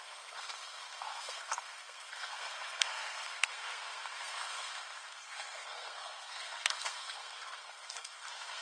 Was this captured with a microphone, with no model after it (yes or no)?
no